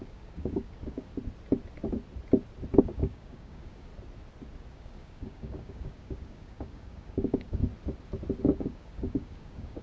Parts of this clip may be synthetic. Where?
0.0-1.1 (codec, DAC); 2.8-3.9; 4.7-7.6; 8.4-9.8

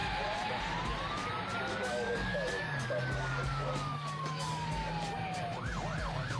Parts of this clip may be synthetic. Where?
1.7-4.9 (codec, DAC)